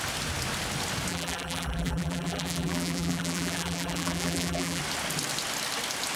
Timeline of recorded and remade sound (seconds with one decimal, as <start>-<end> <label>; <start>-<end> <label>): 0.0-1.1 recorded; 1.1-4.8 remade; 4.8-6.2 recorded